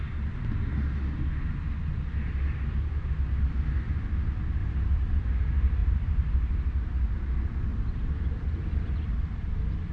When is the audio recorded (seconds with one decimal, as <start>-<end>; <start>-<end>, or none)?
0.0-4.6; 5.3-5.8; 6.9-7.7; 9.1-9.9